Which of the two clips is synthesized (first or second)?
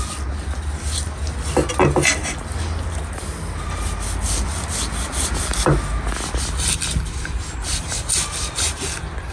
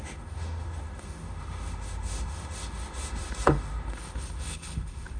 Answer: second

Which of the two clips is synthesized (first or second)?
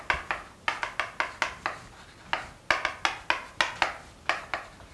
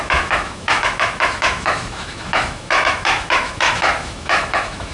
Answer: second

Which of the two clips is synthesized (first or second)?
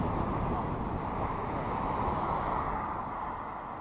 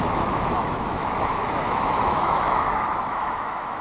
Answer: second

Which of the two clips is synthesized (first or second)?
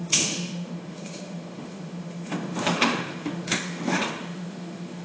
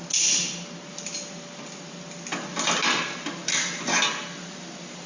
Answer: first